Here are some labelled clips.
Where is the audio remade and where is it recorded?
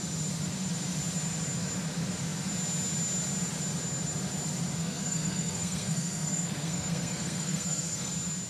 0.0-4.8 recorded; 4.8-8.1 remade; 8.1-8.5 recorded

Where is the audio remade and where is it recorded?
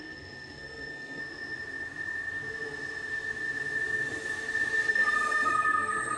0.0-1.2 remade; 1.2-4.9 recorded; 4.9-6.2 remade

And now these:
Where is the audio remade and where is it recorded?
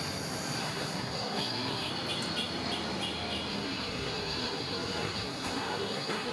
0.0-0.6 recorded; 0.6-1.9 remade; 1.9-3.5 recorded; 3.5-6.3 remade